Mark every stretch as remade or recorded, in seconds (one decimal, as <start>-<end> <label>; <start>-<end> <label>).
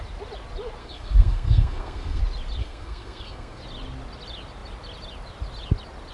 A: 0.0-0.8 recorded; 0.8-2.2 remade; 2.2-2.6 recorded; 2.6-3.6 remade; 3.6-6.1 recorded